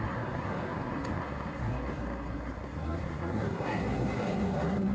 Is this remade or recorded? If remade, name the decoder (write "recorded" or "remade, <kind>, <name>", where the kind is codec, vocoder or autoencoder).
remade, codec, SNAC